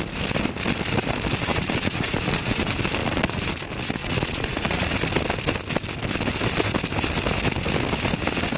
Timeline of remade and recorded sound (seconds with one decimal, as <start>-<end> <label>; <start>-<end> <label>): 0.0-1.5 recorded; 1.5-2.6 remade; 2.6-3.0 recorded; 3.0-3.5 remade; 3.5-4.0 recorded; 4.0-4.9 remade; 4.9-8.6 recorded